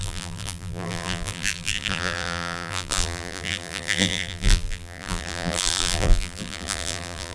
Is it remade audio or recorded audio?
remade